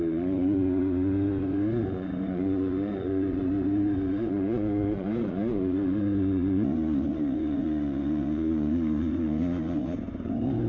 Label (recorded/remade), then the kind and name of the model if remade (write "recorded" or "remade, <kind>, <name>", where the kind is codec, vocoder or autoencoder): remade, vocoder, Vocos